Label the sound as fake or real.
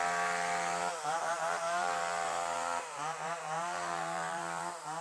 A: fake